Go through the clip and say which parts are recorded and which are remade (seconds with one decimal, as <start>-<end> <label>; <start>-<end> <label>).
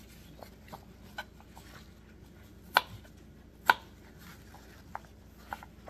0.0-5.9 recorded